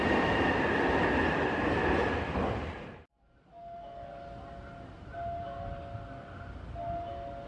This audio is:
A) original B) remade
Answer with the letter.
A